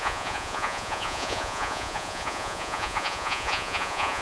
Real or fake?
fake